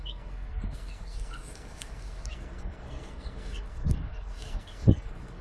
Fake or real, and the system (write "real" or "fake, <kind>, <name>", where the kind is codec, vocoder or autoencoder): fake, codec, SNAC